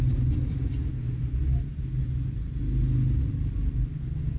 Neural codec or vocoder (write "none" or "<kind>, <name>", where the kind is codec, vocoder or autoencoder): none